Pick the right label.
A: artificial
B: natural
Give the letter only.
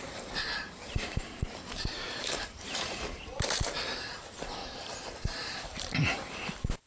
A